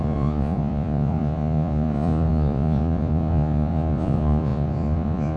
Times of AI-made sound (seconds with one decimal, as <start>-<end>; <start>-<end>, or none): 0.0-5.4